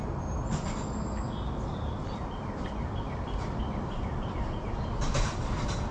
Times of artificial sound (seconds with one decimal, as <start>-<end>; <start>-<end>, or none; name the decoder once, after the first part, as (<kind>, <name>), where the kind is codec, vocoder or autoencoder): 1.7-5.2 (vocoder, BigVGAN v2)